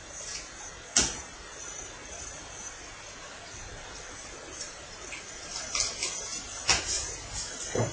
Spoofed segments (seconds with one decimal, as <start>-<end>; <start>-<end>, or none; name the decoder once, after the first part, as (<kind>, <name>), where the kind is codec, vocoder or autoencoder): 0.0-0.7 (vocoder, BigVGAN v2)